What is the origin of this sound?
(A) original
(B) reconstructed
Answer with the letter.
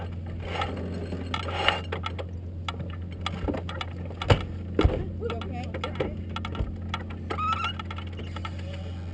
A